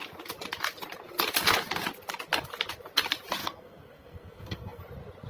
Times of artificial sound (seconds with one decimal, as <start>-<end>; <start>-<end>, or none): 3.4-4.8